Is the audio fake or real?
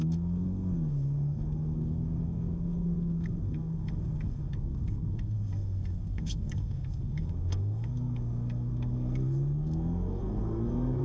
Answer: fake